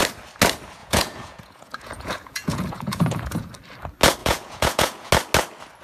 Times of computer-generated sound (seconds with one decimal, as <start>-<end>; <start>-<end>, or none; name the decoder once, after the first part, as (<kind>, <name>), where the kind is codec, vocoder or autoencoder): 0.8-3.5 (vocoder, Vocos); 4.2-5.1